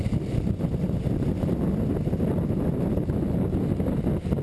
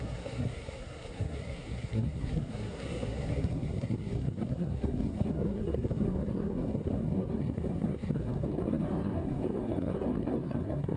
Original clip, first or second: first